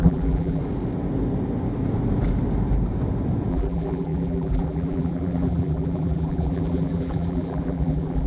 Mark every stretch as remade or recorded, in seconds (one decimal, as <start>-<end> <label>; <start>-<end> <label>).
0.0-0.6 remade; 0.6-3.5 recorded; 3.5-8.3 remade